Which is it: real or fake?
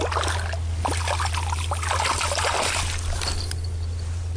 real